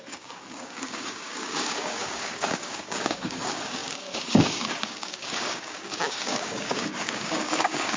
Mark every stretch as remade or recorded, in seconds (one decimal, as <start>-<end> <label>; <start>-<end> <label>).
0.0-8.0 remade